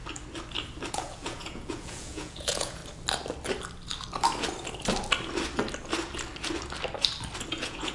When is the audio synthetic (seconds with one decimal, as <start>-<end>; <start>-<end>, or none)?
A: 0.9-2.8; 7.5-7.9